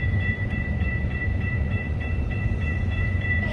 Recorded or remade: remade